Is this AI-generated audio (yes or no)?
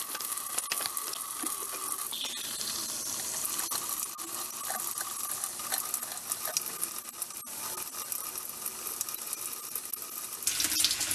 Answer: no